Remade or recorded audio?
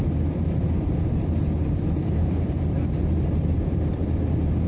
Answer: remade